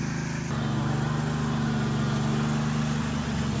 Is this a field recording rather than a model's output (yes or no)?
yes